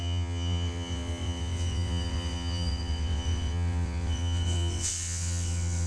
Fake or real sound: fake